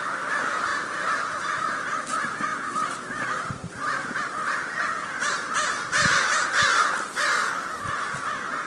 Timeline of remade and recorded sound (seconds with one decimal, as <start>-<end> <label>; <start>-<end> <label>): 0.0-8.7 recorded